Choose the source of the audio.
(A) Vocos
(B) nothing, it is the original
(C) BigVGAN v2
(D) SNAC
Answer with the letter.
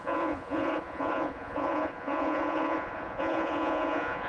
A